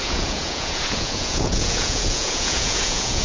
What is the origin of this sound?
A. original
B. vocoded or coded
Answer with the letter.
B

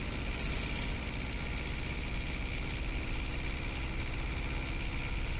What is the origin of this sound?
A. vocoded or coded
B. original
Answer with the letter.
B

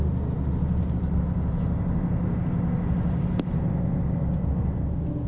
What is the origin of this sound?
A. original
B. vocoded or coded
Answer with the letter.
A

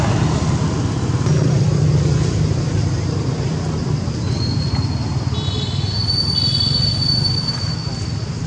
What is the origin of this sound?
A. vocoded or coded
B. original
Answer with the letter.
B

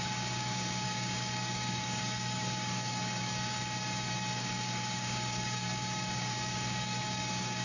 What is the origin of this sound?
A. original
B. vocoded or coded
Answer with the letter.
B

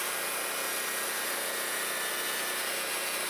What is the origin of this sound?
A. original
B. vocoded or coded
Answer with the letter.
A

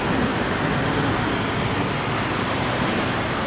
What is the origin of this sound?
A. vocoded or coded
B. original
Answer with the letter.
B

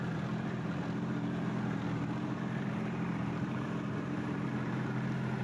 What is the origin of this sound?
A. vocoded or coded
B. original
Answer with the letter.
A